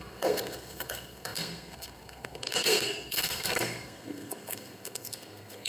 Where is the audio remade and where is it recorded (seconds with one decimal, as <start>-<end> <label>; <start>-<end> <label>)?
0.0-5.7 remade